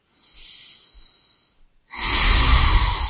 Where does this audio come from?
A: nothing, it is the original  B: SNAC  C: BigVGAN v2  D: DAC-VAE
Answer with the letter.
A